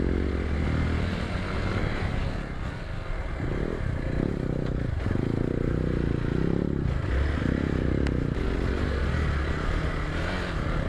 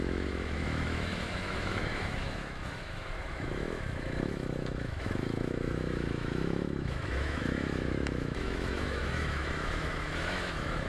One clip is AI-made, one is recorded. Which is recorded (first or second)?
first